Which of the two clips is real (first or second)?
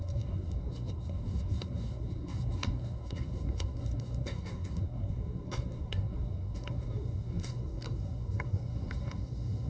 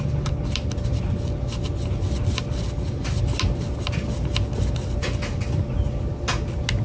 second